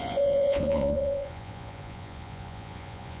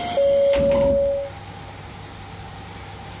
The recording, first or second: second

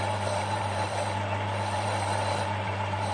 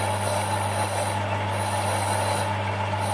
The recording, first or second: second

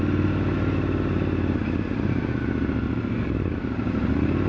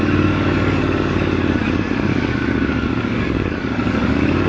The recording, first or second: first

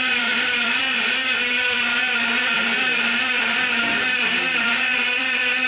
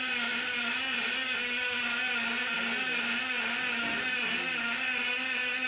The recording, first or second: second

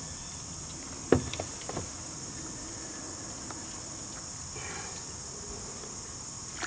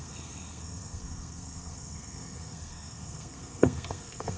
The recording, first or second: first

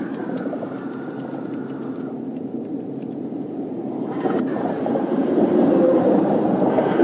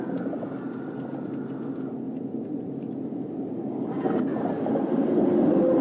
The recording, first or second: second